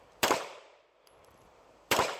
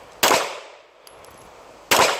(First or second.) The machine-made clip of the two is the first